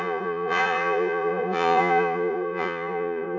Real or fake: fake